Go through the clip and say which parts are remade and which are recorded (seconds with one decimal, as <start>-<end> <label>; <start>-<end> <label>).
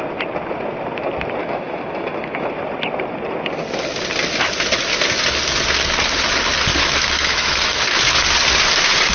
0.0-1.4 recorded; 1.4-2.5 remade; 2.5-6.7 recorded; 6.7-7.9 remade; 7.9-9.1 recorded